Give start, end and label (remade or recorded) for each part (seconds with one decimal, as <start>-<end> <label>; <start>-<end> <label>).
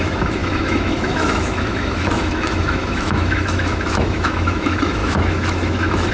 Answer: 0.0-6.1 remade